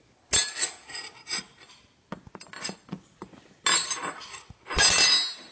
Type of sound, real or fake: real